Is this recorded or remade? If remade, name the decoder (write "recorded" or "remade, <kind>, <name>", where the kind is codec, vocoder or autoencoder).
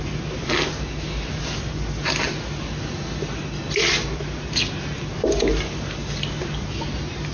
recorded